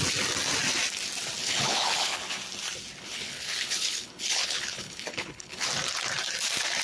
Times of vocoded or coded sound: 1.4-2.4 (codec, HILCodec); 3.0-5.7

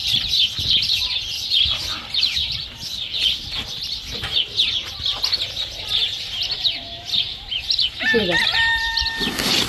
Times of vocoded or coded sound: 0.0-0.6 (vocoder, BigVGAN v2)

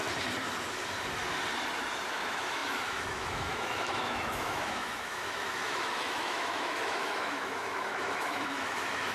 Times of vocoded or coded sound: 2.1-9.1 (autoencoder, DAC-VAE)

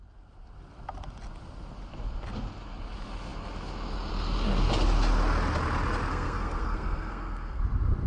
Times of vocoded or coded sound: 6.1-7.6 (codec, SNAC)